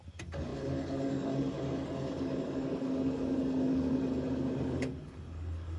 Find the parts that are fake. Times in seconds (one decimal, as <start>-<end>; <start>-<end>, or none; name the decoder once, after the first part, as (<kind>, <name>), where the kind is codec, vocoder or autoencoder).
0.0-5.8 (codec, DAC)